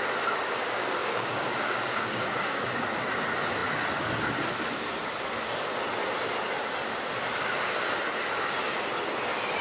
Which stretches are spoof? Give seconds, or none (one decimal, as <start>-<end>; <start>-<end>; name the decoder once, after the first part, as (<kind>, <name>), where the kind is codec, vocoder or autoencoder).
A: 1.0-2.7 (codec, DAC)